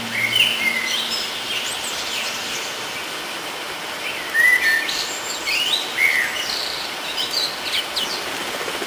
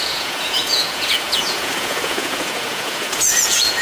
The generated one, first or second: second